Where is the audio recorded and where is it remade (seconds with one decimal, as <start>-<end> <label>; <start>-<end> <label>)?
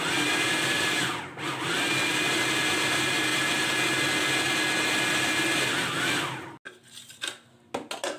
0.0-8.2 recorded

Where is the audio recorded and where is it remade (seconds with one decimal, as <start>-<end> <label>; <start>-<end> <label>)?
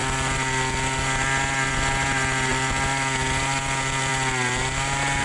0.0-5.2 recorded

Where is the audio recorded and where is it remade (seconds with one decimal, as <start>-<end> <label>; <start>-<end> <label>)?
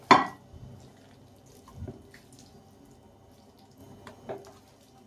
0.0-3.8 recorded; 3.8-4.3 remade; 4.3-5.1 recorded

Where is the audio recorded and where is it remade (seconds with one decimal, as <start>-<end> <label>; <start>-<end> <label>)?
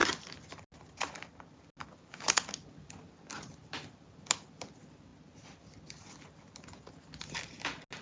0.0-8.0 recorded